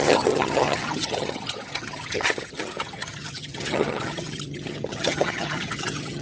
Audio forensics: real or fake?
fake